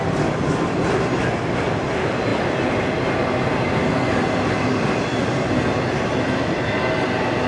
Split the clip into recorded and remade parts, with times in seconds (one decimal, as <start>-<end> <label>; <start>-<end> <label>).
0.0-7.5 recorded

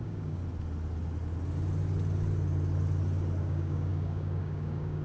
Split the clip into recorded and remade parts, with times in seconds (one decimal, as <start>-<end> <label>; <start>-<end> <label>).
0.0-0.4 remade; 0.4-3.4 recorded; 3.4-5.0 remade

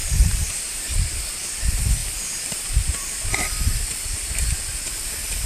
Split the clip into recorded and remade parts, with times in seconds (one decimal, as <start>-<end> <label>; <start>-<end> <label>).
0.0-5.5 recorded

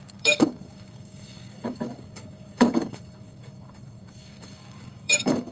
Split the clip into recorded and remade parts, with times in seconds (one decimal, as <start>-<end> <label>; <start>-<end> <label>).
0.0-5.5 remade

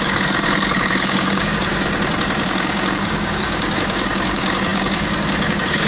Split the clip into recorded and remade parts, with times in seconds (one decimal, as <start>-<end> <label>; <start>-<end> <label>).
0.0-1.7 remade; 1.7-2.4 recorded; 2.4-5.9 remade

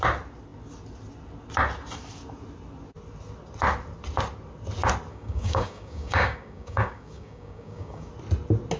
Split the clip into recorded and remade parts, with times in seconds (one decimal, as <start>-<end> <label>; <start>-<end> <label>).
0.0-5.1 recorded; 5.1-8.1 remade; 8.1-8.8 recorded

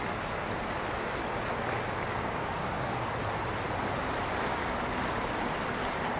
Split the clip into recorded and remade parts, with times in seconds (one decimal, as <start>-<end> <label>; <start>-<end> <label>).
0.0-2.1 recorded; 2.1-3.1 remade; 3.1-6.2 recorded